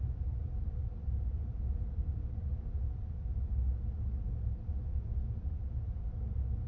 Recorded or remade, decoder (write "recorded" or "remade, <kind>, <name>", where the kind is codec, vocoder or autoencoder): recorded